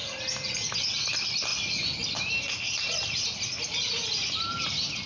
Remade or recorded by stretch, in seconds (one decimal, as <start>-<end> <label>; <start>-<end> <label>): 0.0-5.1 recorded